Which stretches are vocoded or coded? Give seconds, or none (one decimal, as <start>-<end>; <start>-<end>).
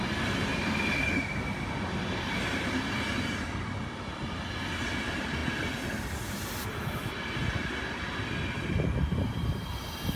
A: none